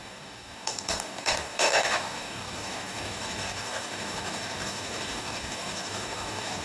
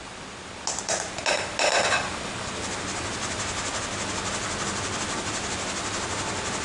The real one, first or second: second